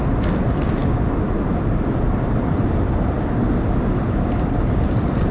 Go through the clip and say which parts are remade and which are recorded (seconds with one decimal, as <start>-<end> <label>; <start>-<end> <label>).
0.0-5.3 recorded